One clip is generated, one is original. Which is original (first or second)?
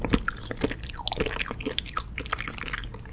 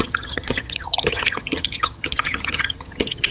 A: first